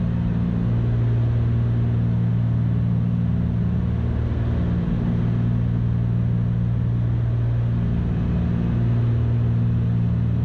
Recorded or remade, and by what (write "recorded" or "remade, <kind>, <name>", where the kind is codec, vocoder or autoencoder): recorded